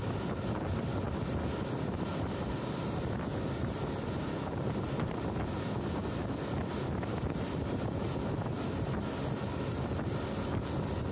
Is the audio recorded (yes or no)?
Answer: yes